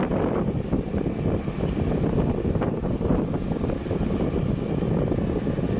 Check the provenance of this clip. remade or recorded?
recorded